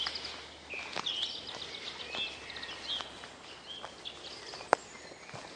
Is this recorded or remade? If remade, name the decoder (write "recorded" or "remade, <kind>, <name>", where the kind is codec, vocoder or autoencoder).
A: recorded